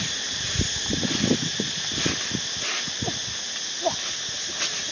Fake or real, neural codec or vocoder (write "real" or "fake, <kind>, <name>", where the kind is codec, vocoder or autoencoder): real